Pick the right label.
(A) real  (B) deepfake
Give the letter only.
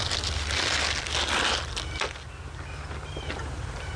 A